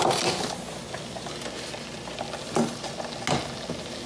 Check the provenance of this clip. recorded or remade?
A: recorded